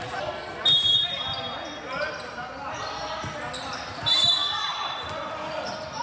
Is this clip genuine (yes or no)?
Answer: yes